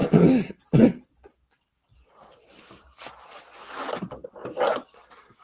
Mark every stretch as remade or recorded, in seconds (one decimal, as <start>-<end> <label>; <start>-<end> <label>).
0.0-5.4 remade